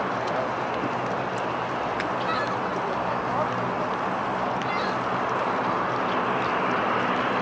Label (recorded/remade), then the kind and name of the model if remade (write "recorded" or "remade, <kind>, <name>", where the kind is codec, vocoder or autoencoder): recorded